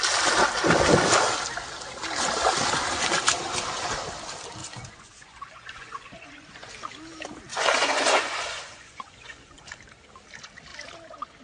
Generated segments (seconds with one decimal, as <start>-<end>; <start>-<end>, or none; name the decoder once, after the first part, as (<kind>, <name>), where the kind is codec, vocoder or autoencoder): 4.6-6.7 (vocoder, Vocos); 7.5-9.7